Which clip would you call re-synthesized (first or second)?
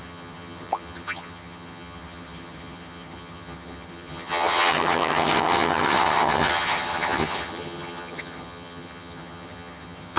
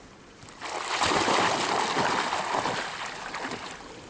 first